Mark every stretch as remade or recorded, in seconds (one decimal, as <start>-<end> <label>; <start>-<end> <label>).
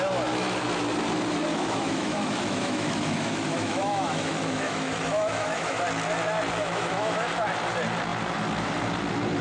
0.0-1.5 recorded; 1.5-5.8 remade; 5.8-6.6 recorded; 6.6-7.3 remade; 7.3-9.4 recorded